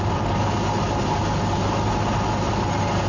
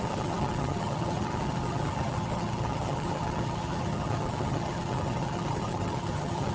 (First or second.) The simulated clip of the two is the second